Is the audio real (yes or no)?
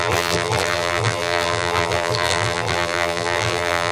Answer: no